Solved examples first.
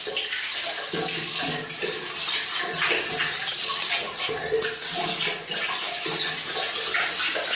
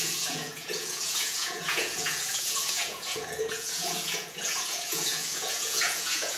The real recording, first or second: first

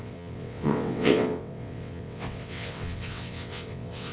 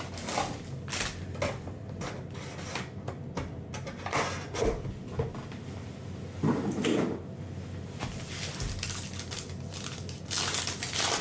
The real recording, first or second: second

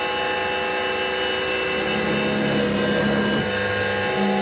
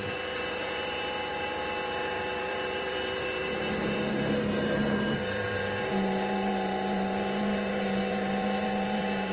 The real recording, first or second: first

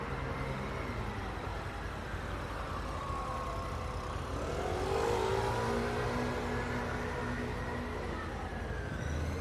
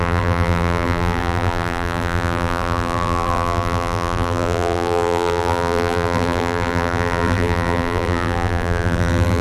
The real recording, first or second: first